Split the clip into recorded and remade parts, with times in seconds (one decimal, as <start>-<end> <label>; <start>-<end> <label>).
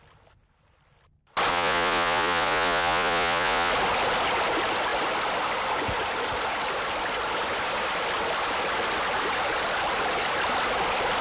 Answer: 0.0-1.5 recorded; 1.5-3.7 remade; 3.7-11.2 recorded